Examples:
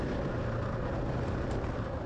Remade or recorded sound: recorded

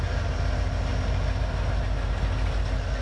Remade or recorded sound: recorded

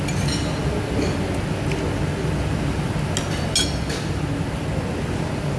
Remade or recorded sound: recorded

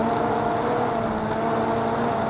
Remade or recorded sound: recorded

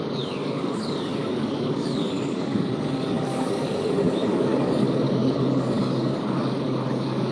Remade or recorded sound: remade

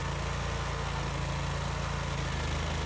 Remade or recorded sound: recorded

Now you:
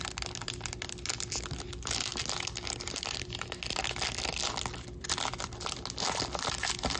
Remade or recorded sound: recorded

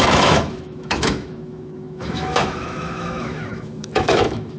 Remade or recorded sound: remade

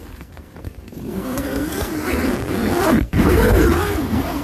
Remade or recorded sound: remade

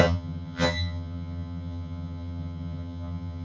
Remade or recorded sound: remade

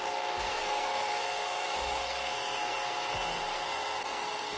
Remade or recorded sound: remade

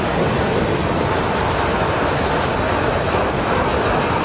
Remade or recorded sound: recorded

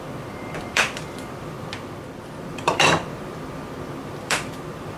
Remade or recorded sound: remade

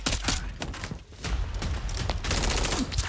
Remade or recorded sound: recorded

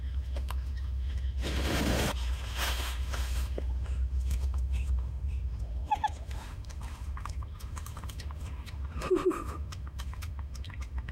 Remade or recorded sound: remade